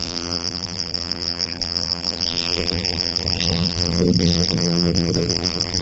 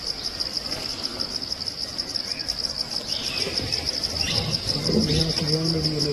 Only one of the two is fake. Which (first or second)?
first